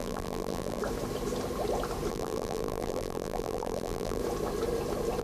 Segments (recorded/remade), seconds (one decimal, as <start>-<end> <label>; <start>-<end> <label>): 0.0-0.8 remade; 0.8-2.1 recorded; 2.1-4.2 remade; 4.2-5.2 recorded